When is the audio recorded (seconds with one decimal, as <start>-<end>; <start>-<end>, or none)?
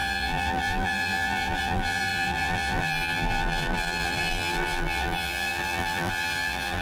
none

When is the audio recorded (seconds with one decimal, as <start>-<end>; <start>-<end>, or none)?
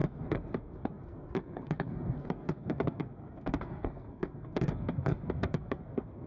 none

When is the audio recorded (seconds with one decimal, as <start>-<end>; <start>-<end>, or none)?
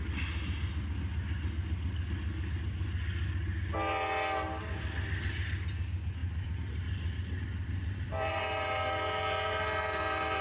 0.0-6.2; 8.4-10.4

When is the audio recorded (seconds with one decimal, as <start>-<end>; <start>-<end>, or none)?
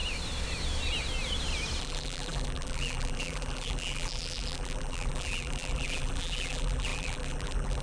0.0-1.8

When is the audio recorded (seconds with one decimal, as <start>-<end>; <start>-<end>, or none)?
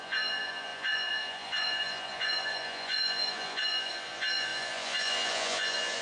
none